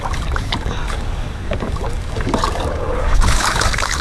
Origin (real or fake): fake